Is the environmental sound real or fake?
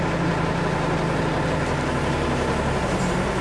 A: real